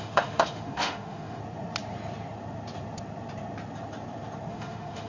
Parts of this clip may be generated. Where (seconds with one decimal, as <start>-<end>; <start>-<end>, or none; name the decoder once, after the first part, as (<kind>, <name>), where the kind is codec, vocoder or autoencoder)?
0.0-1.4 (autoencoder, DAC-VAE); 4.5-5.1